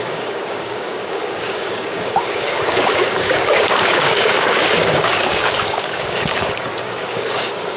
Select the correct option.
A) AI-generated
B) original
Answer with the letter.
A